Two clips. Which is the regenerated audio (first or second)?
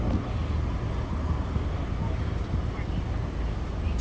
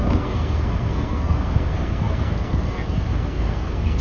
second